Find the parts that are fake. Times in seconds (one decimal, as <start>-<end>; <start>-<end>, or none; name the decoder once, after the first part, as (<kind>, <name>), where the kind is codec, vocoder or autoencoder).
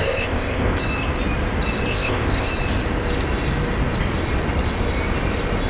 0.0-0.8 (codec, ZipCodec); 1.9-2.5